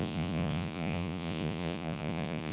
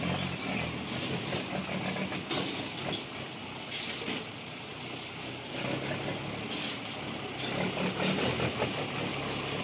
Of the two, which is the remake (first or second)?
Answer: first